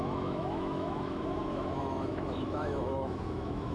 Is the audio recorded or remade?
remade